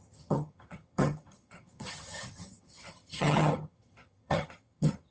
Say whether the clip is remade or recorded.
remade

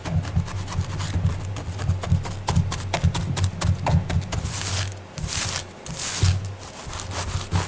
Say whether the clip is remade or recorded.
recorded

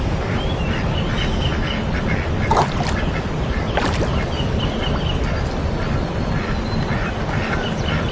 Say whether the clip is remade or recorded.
recorded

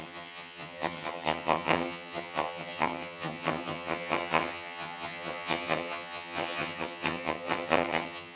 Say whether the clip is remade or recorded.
remade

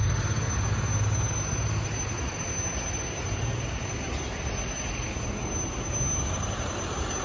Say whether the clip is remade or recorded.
recorded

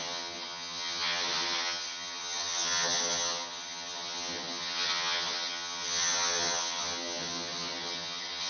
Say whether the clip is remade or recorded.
remade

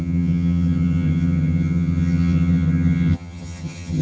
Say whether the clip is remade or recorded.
remade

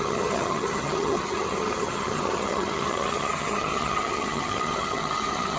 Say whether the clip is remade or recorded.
remade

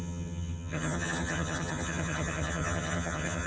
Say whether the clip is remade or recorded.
remade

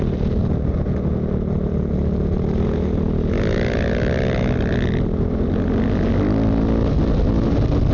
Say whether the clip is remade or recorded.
recorded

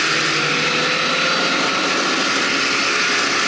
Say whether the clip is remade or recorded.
recorded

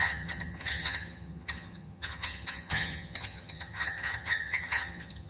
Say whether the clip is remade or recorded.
remade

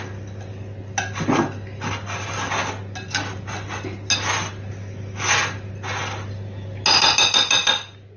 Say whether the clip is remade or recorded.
recorded